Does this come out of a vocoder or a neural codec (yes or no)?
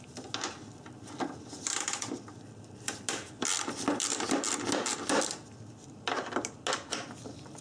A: no